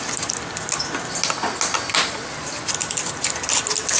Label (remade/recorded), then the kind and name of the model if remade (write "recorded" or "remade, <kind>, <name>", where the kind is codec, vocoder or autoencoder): recorded